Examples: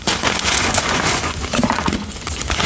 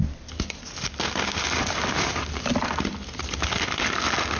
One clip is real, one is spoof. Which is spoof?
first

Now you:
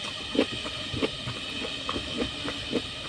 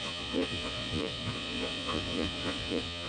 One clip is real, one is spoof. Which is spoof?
second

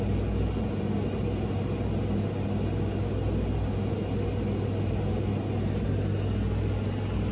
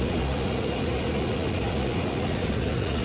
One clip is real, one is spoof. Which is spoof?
second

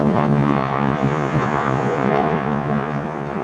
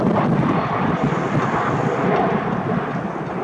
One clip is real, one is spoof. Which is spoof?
first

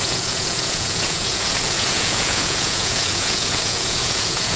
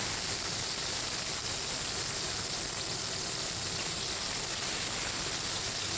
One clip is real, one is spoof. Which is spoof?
first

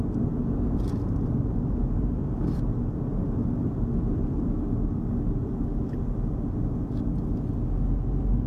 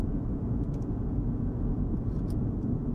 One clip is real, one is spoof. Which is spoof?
second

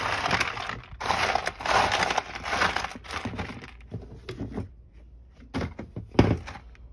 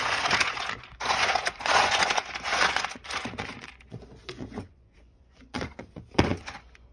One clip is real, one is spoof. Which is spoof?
second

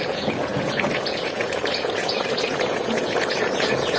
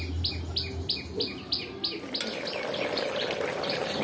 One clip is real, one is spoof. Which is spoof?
first